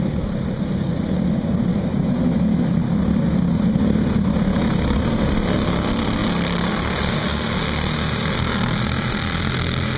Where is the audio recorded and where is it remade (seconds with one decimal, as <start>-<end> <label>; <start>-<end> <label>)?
0.0-1.7 recorded; 1.7-2.8 remade; 2.8-4.5 recorded; 4.5-5.0 remade; 5.0-10.0 recorded